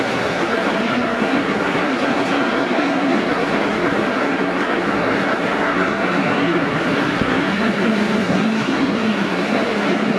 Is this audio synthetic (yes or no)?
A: yes